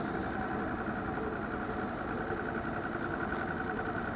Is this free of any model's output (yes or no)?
yes